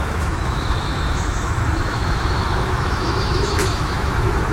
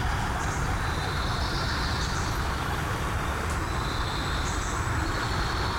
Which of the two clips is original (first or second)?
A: second